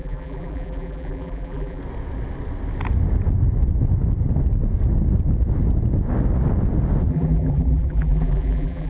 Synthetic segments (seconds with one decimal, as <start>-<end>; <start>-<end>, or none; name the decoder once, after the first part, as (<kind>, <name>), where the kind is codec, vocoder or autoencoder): 0.0-1.8 (vocoder, BigVGAN v2); 7.1-8.9